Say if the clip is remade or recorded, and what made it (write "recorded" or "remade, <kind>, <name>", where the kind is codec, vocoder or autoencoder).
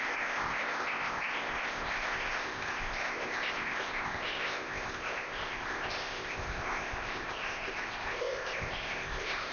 remade, codec, ZipCodec